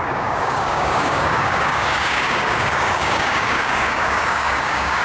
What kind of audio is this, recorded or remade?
remade